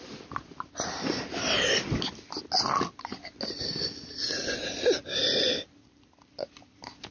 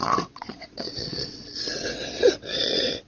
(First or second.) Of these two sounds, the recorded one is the first